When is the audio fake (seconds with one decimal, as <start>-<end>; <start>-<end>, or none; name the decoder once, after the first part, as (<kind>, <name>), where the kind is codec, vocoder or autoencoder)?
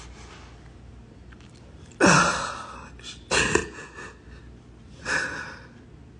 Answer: none